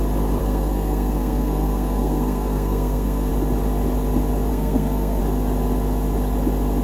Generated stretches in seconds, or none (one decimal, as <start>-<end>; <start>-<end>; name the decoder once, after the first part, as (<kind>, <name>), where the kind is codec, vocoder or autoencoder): 0.4-3.3 (codec, SNAC); 4.5-5.2